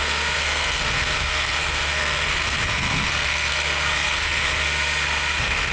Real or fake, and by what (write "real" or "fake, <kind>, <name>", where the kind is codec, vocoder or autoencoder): fake, codec, SNAC